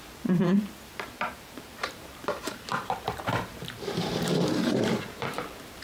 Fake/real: fake